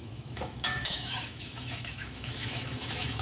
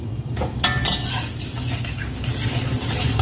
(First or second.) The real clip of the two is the second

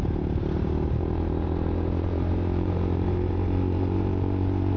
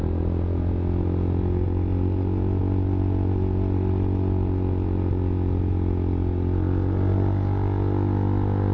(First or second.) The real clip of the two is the second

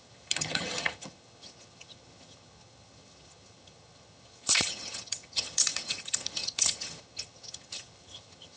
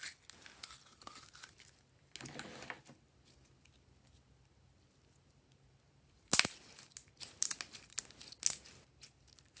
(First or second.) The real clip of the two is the second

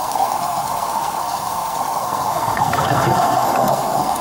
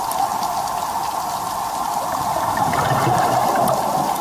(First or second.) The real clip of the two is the second